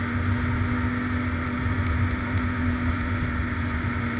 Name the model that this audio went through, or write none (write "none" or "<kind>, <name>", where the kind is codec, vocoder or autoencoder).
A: none